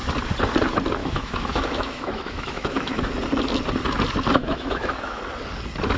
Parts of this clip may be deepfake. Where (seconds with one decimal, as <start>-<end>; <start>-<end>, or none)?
1.0-3.1; 4.4-5.2